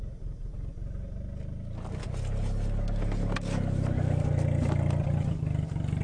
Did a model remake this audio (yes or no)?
no